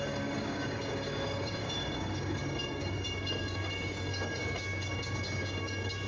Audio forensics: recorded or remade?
remade